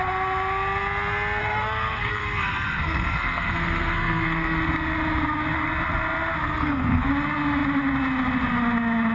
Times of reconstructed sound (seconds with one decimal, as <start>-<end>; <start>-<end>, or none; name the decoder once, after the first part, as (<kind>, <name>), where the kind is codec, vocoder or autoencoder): 1.4-4.6 (codec, SNAC); 6.4-7.1